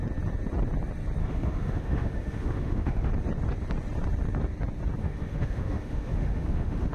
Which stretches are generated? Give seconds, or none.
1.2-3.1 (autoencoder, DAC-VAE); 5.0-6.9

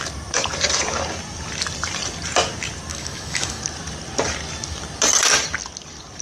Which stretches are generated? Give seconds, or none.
2.9-3.6 (autoencoder, DAC-VAE)